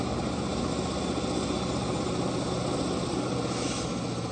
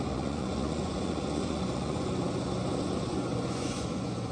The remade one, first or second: second